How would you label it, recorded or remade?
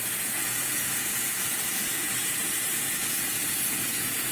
remade